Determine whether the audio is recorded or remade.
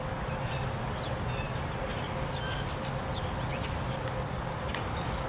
recorded